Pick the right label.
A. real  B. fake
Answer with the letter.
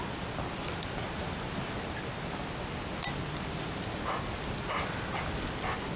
A